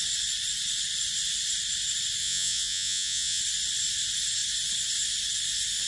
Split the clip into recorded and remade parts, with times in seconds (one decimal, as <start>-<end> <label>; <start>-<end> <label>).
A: 0.0-2.2 recorded; 2.2-3.4 remade; 3.4-5.9 recorded